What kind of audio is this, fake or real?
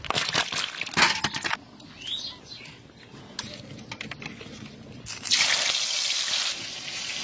real